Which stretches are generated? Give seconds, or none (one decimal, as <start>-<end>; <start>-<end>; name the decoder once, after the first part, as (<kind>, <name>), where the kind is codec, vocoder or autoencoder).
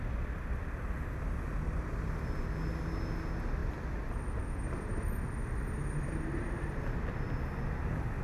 none